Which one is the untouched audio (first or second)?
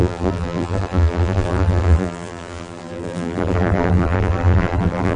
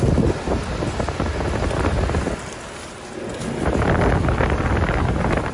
second